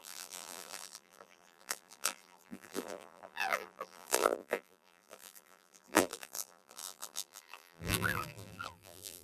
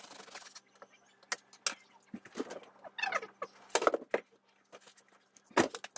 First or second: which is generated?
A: first